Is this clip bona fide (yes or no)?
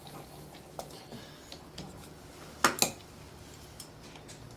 yes